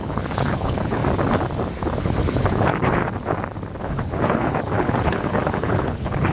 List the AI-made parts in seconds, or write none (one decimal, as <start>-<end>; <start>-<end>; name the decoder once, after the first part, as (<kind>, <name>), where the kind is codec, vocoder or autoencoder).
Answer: 0.0-1.0 (codec, HILCodec); 2.0-3.0; 3.8-6.3